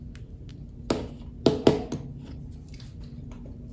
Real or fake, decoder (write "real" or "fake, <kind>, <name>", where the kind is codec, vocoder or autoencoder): real